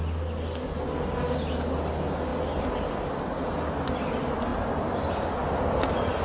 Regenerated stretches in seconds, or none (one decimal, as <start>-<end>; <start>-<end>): none